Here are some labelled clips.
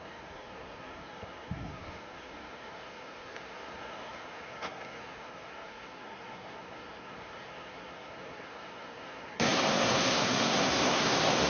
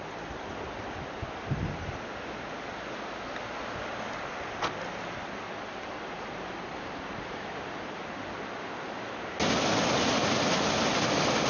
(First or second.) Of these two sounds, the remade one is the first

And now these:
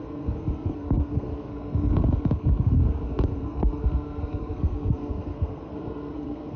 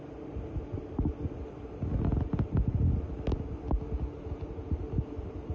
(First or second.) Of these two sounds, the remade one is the first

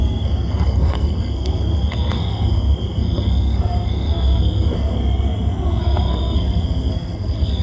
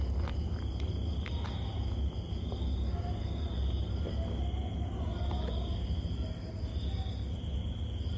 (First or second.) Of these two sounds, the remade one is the first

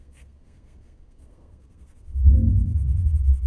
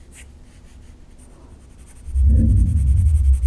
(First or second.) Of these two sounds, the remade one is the first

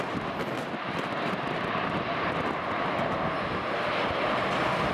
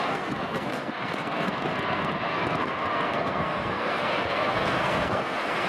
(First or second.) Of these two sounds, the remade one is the second